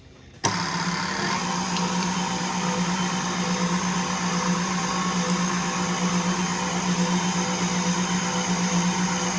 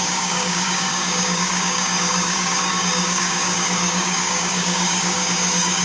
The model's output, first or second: second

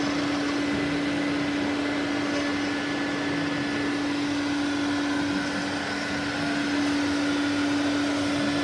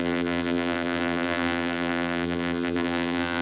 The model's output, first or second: second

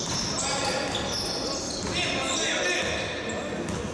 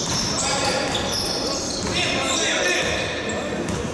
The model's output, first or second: second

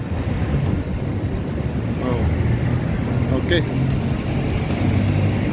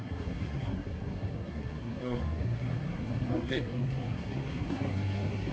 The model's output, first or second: second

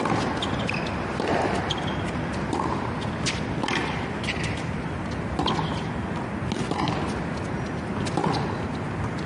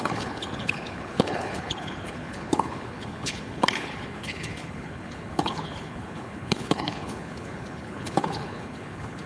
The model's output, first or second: second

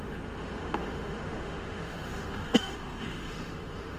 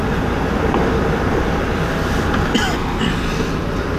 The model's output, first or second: first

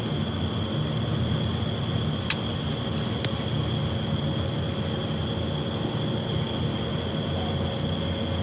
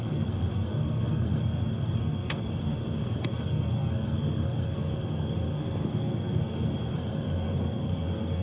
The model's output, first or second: second